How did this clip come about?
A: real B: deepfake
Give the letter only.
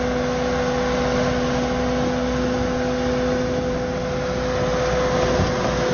A